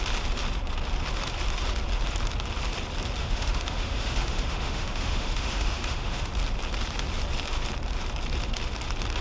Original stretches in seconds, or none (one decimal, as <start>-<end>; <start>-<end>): 0.0-3.2; 6.3-9.2